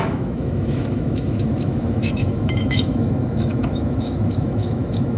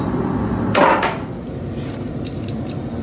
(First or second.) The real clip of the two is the second